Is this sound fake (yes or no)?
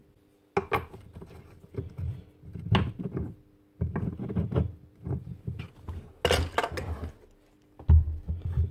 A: no